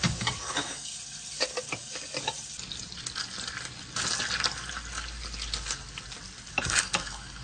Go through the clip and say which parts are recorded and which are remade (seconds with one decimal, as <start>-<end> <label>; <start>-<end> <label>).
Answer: 0.0-0.9 remade; 0.9-1.7 recorded; 1.7-2.1 remade; 2.1-6.5 recorded; 6.5-7.4 remade